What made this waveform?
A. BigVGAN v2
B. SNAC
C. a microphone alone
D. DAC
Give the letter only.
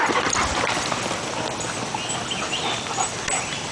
C